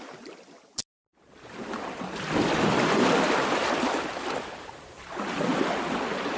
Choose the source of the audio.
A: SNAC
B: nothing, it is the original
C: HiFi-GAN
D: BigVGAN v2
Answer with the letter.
B